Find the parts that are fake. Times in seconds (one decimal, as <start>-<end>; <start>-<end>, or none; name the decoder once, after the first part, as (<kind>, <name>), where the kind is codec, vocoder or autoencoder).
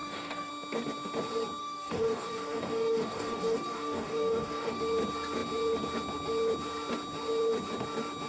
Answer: 0.0-0.5 (codec, DAC); 1.6-4.8